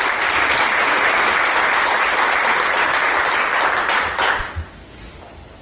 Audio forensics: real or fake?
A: fake